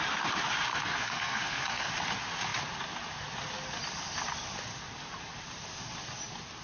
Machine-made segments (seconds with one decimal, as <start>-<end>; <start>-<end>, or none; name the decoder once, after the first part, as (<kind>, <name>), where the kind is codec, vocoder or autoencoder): 0.7-1.9 (codec, SNAC)